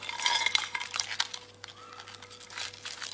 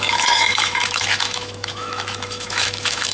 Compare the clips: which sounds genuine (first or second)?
first